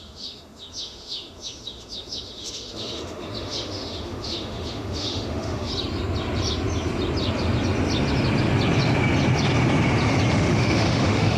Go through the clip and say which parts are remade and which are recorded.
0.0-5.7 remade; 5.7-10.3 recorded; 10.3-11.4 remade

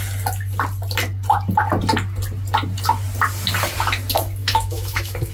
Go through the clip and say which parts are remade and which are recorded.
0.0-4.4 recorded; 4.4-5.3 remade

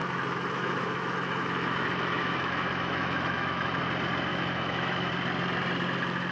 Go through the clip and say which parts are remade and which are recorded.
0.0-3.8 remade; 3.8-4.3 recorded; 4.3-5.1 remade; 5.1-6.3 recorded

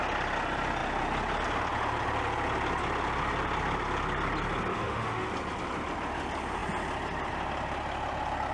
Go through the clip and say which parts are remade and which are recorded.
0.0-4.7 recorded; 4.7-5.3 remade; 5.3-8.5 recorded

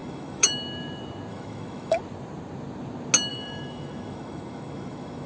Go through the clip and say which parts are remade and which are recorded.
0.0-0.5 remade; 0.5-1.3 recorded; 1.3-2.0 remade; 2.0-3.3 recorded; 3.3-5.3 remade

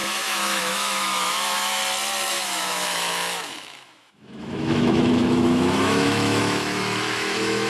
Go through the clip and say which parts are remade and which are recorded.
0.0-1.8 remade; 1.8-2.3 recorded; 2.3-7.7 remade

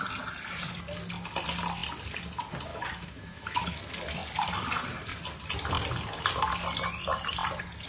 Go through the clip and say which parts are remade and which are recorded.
0.0-2.7 recorded; 2.7-3.8 remade; 3.8-7.9 recorded

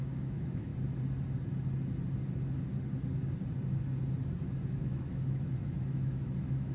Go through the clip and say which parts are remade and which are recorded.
0.0-0.7 remade; 0.7-4.7 recorded; 4.7-6.7 remade